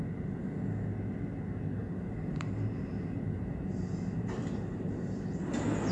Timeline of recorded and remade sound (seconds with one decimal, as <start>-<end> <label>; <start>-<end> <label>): 0.0-1.8 recorded; 1.8-5.3 remade; 5.3-5.9 recorded